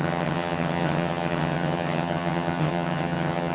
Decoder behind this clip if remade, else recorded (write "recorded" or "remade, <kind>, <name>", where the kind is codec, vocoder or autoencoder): remade, vocoder, HiFi-GAN